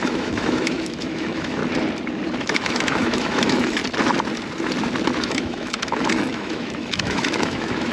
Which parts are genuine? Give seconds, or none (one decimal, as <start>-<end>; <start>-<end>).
1.6-2.4; 3.8-5.3